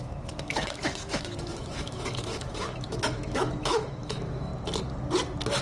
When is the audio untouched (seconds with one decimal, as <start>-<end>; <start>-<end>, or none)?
4.5-5.6